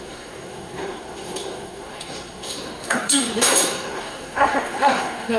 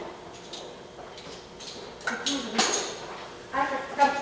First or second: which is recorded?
second